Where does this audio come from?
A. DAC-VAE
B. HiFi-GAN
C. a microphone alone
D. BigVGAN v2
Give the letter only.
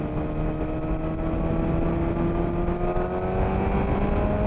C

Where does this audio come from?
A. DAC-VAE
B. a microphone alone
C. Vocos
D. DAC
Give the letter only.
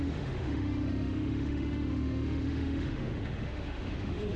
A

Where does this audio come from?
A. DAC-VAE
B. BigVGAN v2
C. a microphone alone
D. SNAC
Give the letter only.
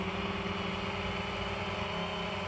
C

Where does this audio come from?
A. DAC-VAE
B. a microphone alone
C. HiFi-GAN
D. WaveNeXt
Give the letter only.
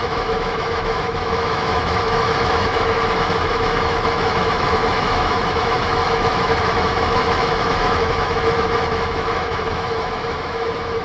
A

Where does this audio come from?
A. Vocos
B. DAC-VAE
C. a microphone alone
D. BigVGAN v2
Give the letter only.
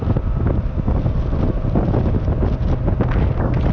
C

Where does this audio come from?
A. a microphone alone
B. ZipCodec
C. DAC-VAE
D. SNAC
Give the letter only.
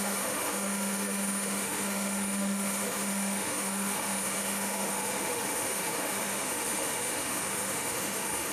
C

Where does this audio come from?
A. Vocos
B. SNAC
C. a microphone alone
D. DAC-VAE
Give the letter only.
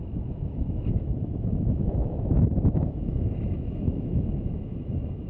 D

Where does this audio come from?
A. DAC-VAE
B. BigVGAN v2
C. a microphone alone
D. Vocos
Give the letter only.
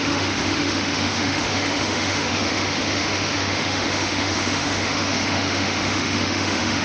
A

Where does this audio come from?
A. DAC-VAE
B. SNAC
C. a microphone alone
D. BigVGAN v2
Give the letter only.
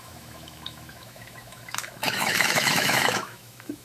A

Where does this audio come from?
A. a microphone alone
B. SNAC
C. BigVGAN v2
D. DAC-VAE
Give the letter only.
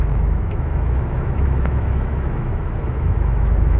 D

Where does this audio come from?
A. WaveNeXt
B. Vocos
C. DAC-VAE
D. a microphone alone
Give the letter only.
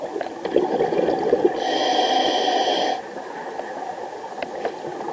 D